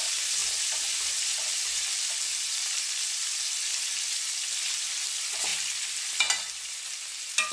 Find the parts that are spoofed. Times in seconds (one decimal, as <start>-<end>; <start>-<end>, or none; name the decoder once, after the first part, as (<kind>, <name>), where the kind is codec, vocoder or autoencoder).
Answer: none